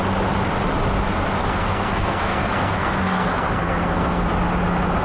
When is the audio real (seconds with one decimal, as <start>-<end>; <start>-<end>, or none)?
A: 0.0-1.4; 4.2-5.0